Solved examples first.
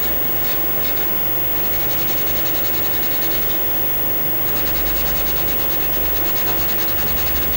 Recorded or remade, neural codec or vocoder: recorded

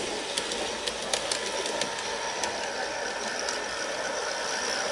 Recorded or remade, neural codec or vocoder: recorded